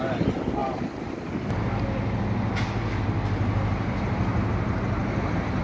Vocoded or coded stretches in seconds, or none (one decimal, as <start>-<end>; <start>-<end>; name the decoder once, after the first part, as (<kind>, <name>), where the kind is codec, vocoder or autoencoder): none